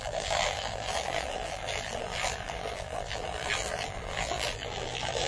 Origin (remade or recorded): remade